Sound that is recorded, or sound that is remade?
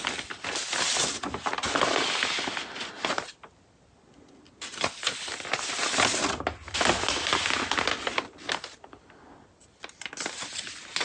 recorded